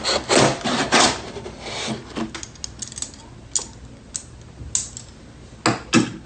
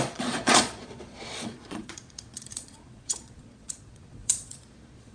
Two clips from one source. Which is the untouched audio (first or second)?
first